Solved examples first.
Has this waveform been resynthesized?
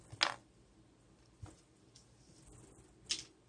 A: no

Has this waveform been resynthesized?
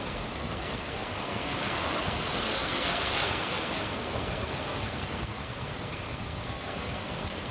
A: yes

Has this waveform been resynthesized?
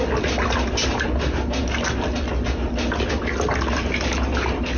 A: no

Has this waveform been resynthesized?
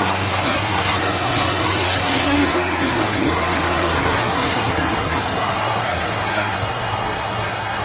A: yes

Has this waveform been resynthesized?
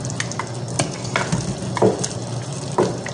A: no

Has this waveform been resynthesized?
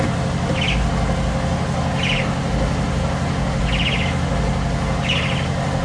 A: no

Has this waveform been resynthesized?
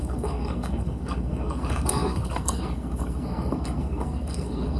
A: yes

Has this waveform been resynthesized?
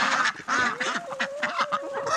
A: no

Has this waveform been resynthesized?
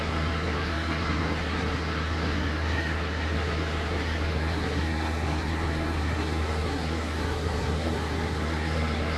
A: yes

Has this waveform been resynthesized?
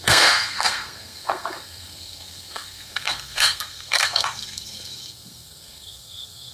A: yes